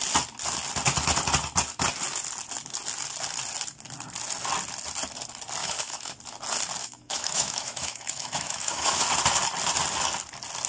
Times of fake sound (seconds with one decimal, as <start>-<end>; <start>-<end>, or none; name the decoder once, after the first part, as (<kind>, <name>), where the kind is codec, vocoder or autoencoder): 5.6-6.2 (autoencoder, DAC-VAE); 6.8-9.0